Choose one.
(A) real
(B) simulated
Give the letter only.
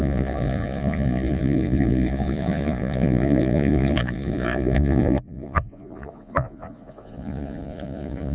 B